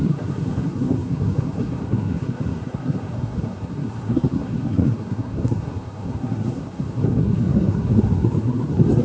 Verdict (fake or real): fake